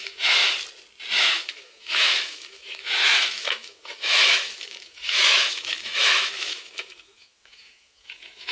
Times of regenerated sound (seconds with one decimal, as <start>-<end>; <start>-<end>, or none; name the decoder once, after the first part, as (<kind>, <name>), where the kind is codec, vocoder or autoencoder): 0.0-0.4 (autoencoder, DAC-VAE); 1.2-8.5